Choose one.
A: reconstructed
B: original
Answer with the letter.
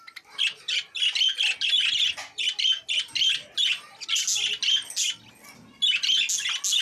B